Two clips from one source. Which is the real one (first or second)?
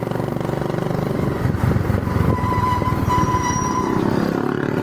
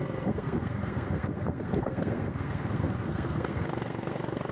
first